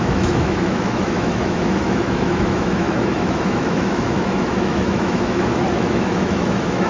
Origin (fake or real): fake